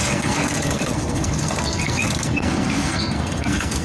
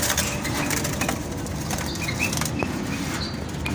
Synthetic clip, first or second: first